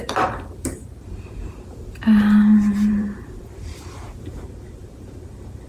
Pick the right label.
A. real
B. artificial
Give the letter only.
B